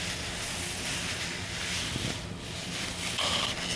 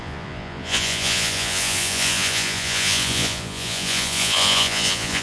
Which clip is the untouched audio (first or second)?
first